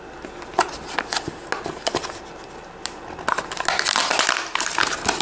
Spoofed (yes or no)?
no